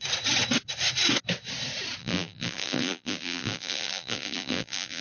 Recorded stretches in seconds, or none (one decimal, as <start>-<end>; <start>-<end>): 0.0-2.0